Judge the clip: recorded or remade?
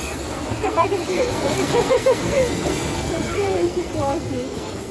remade